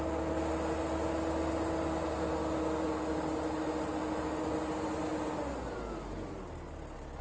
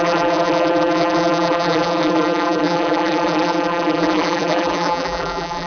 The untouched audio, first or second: first